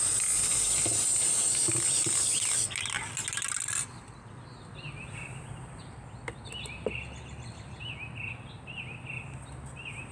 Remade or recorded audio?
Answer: recorded